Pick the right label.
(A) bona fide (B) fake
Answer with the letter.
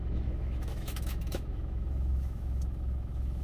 B